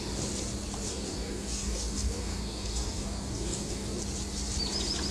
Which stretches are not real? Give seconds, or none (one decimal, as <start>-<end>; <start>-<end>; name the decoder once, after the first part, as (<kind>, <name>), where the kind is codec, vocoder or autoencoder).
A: 0.9-4.0 (codec, DAC)